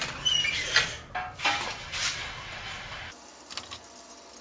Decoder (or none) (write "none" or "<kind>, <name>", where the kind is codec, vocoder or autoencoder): none